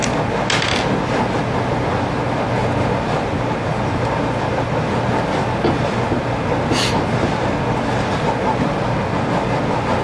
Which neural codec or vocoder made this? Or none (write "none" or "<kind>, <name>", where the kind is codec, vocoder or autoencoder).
none